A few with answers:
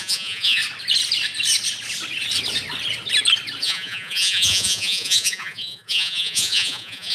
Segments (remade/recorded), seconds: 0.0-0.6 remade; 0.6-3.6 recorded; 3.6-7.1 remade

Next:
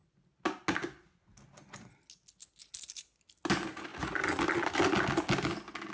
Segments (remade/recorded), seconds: 0.0-5.9 recorded

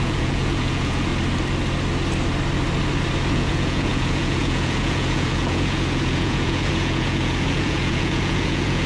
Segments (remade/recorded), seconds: 0.0-1.1 remade; 1.1-3.3 recorded; 3.3-8.9 remade

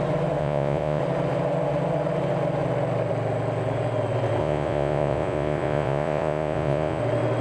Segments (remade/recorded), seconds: 0.0-0.4 recorded; 0.4-1.0 remade; 1.0-4.4 recorded; 4.4-7.0 remade; 7.0-7.4 recorded

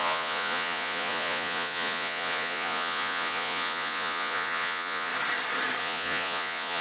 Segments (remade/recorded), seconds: 0.0-5.1 remade; 5.1-5.8 recorded; 5.8-6.8 remade

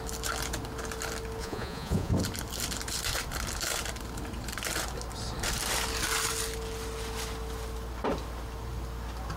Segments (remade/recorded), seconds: 0.0-1.4 recorded; 1.4-2.1 remade; 2.1-9.4 recorded

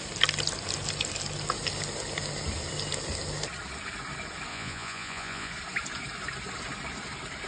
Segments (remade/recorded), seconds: 0.0-4.5 recorded; 4.5-5.5 remade; 5.5-7.5 recorded